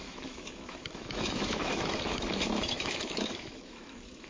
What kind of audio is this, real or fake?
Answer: fake